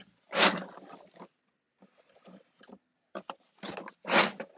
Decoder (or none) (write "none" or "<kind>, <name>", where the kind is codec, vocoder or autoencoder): none